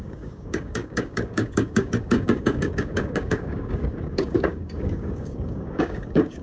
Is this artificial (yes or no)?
yes